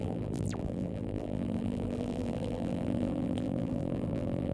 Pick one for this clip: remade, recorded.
remade